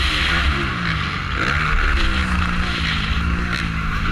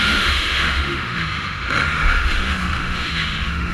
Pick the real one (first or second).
first